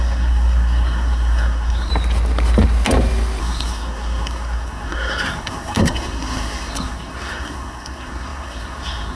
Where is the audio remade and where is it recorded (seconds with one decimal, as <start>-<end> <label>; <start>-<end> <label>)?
0.0-1.9 remade; 1.9-3.4 recorded; 3.4-9.2 remade